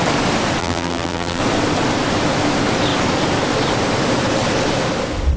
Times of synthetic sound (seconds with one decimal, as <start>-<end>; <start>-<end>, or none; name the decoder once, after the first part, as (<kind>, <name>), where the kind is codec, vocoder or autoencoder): 0.6-1.4 (vocoder, BigVGAN v2)